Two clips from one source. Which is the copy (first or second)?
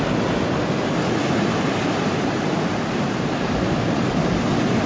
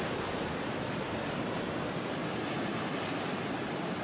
second